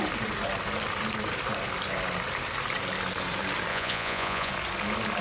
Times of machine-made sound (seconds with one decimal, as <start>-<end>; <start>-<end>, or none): 3.7-4.5